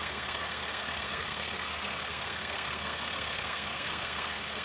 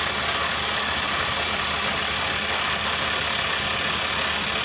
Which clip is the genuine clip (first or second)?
second